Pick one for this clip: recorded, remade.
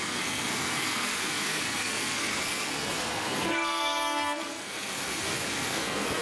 remade